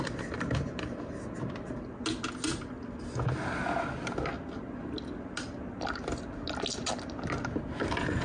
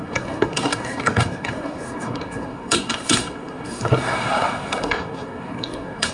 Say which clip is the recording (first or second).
first